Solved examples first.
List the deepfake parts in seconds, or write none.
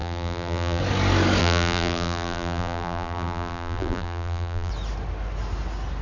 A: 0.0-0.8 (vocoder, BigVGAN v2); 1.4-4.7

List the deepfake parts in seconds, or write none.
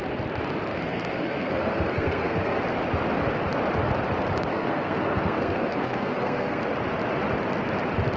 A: 0.7-2.6 (codec, SNAC); 4.5-6.6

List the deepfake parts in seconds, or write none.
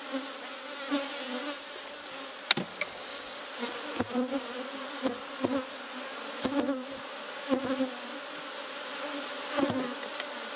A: 2.7-3.4 (codec, DAC)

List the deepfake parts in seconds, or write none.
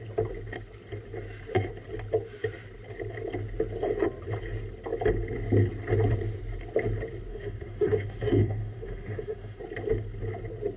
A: 7.3-9.6 (autoencoder, DAC-VAE)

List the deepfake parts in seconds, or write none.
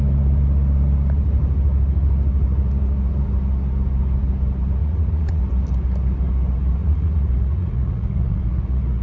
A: 4.8-5.4 (vocoder, Vocos); 6.8-9.0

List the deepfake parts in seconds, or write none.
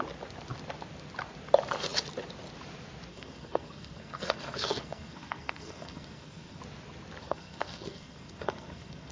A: 3.1-6.6 (codec, SNAC); 7.2-9.1